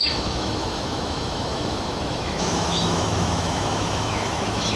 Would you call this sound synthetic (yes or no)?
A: yes